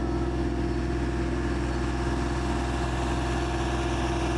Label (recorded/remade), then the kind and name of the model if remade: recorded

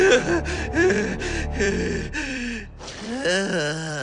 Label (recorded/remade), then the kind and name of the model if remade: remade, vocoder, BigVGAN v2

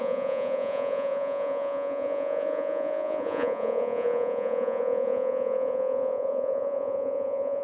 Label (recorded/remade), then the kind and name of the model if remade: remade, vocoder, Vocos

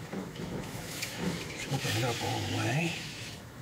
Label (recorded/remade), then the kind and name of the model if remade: remade, autoencoder, DAC-VAE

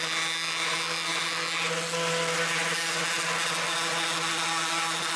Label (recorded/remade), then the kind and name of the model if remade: recorded